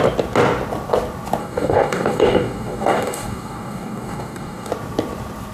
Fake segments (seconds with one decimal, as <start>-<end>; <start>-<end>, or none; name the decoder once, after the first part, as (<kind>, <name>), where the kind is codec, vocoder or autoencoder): 1.4-4.7 (codec, DAC)